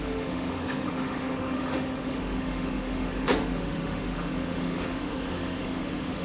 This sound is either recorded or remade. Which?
remade